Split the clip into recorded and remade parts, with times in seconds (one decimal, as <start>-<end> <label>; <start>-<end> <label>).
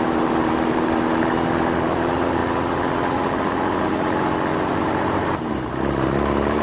0.0-2.4 remade; 2.4-4.7 recorded; 4.7-6.6 remade